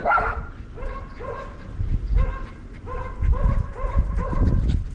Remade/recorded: recorded